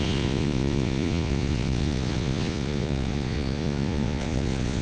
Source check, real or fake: fake